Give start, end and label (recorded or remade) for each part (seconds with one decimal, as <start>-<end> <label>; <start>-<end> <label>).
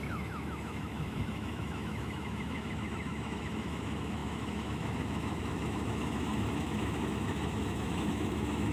0.0-8.7 remade